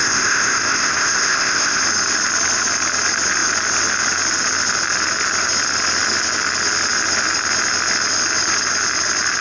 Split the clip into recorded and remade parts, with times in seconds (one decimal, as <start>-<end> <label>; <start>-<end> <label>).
0.0-1.8 remade; 1.8-9.4 recorded